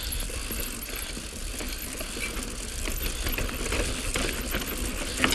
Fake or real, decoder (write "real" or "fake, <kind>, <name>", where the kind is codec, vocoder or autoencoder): real